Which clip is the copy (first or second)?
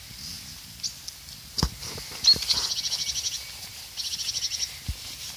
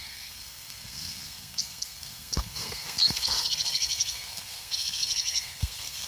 second